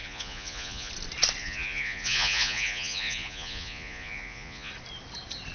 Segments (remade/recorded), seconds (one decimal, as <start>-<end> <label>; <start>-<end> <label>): 0.0-0.9 remade; 0.9-1.4 recorded; 1.4-4.7 remade; 4.7-5.5 recorded